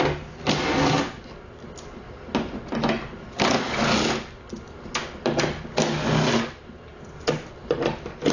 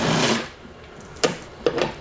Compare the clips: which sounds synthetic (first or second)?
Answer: second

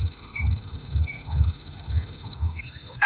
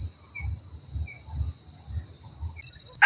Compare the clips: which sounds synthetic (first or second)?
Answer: first